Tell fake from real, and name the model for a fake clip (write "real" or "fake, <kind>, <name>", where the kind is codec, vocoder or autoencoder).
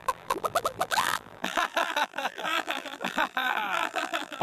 fake, vocoder, BigVGAN v2